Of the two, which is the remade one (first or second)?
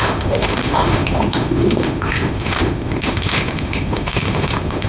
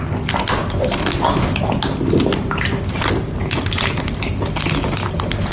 first